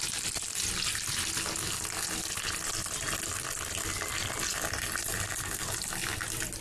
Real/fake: real